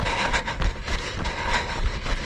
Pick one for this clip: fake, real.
real